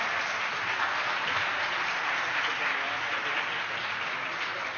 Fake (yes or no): no